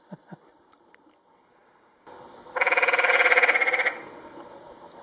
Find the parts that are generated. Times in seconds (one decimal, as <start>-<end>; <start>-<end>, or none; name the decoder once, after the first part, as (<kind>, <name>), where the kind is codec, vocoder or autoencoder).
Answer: none